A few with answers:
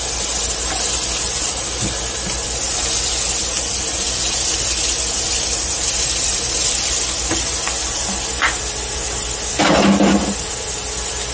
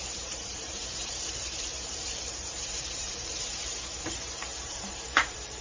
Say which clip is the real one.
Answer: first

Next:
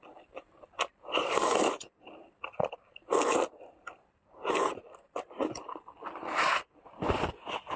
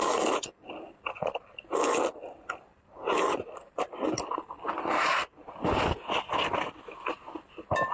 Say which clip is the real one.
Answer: second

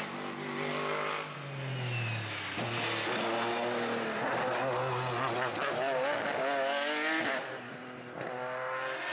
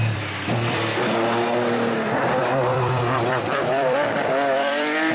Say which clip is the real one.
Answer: first